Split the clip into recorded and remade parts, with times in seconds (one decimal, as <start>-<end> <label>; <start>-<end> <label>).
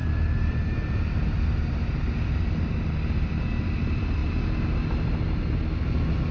0.0-3.8 remade; 3.8-6.3 recorded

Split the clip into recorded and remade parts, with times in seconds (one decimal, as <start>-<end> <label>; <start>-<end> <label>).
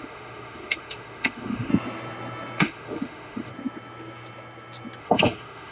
0.0-1.7 remade; 1.7-2.6 recorded; 2.6-3.5 remade; 3.5-5.0 recorded; 5.0-5.7 remade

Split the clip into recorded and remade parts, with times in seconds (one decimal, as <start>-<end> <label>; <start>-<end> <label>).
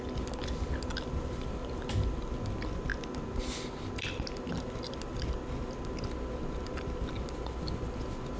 0.0-8.4 recorded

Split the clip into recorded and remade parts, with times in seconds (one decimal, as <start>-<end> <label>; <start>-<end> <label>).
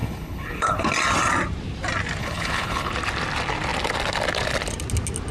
0.0-0.9 remade; 0.9-2.2 recorded; 2.2-2.9 remade; 2.9-5.3 recorded